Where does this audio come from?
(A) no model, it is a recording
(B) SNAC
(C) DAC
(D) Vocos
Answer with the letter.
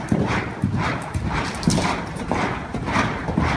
A